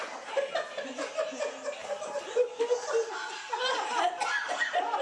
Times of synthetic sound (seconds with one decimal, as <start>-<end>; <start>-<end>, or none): none